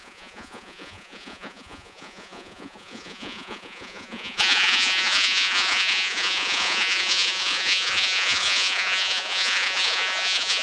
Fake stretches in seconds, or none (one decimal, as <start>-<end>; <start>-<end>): 0.0-10.6